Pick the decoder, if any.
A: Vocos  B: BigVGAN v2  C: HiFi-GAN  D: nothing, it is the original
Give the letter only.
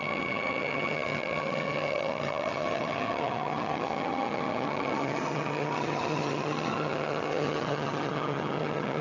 C